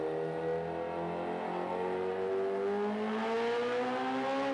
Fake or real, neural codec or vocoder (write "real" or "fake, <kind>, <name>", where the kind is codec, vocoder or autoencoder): real